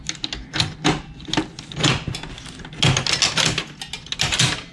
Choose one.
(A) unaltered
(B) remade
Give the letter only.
A